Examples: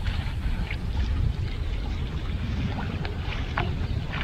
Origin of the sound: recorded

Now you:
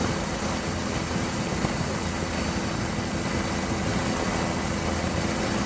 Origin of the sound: recorded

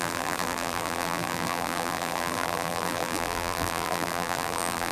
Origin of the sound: remade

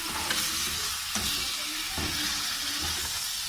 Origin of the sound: recorded